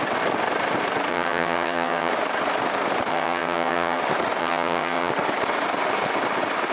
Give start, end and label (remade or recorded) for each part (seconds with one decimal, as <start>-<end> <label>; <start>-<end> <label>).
0.0-1.1 recorded; 1.1-2.1 remade; 2.1-3.1 recorded; 3.1-4.0 remade; 4.0-4.4 recorded; 4.4-5.1 remade; 5.1-6.7 recorded